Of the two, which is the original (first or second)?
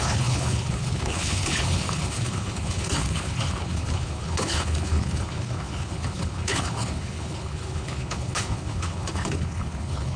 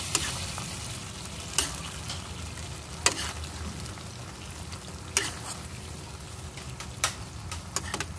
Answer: second